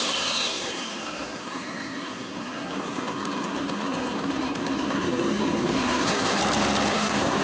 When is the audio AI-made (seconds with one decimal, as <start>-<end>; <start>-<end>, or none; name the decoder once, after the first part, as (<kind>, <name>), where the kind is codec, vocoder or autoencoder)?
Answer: 0.0-6.4 (codec, SNAC); 6.9-7.4